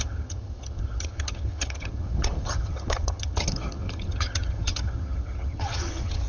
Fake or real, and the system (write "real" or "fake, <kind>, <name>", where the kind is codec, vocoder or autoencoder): fake, vocoder, HiFi-GAN